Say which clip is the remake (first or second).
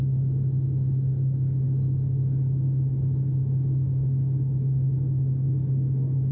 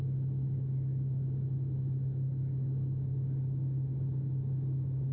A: first